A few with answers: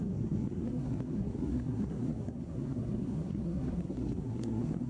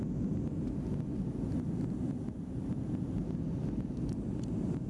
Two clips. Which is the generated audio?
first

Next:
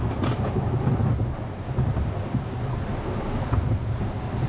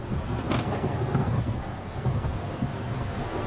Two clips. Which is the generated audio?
second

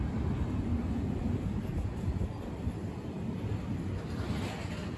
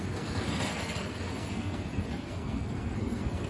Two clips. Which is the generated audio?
second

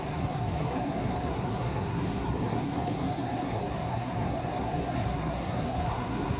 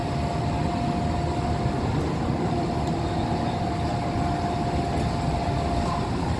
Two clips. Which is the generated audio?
first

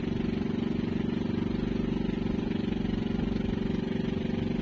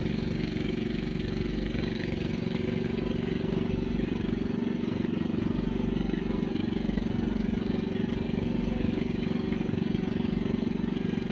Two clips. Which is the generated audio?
second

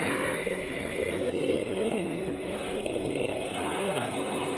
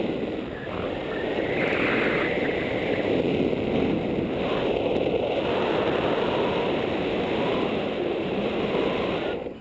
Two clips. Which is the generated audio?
first